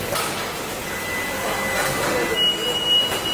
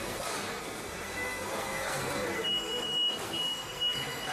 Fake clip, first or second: second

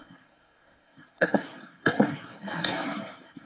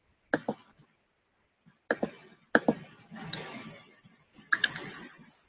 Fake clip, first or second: first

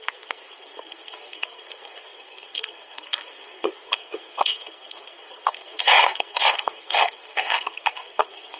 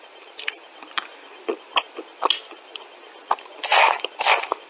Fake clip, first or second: first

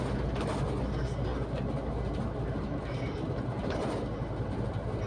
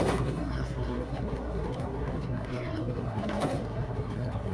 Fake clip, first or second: second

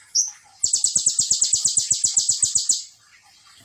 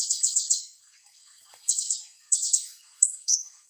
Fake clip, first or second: second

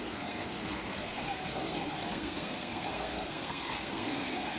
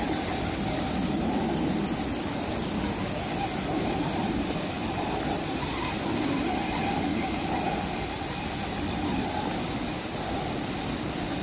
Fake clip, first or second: first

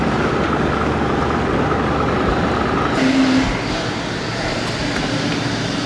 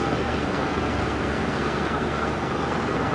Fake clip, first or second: second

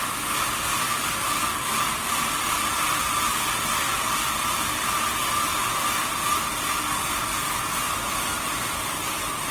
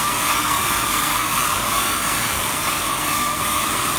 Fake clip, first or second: second